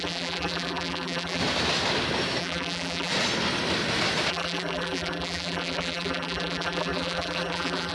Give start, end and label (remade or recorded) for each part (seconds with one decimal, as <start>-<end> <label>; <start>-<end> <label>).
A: 0.0-1.4 remade; 1.4-2.4 recorded; 2.4-3.1 remade; 3.1-4.3 recorded; 4.3-7.9 remade

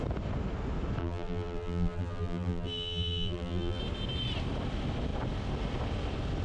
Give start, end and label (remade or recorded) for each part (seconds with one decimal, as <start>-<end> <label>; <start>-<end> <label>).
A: 0.0-1.0 recorded; 1.0-3.8 remade; 3.8-6.4 recorded

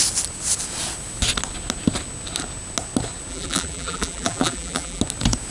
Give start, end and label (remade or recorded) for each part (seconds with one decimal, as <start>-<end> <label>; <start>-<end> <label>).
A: 0.0-3.3 recorded; 3.3-5.0 remade; 5.0-5.5 recorded